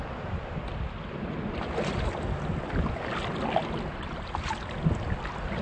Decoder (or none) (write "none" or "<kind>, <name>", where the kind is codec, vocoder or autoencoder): none